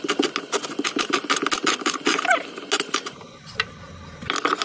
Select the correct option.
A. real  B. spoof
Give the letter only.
A